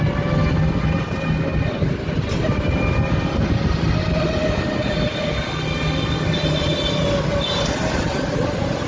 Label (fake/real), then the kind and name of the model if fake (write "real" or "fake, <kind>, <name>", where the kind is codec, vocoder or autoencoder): real